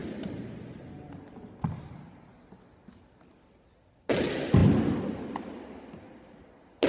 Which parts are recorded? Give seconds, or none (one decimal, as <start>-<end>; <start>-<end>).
0.0-6.9